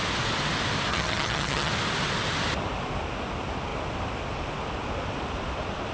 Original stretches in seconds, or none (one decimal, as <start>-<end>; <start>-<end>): 0.0-0.9; 1.7-5.9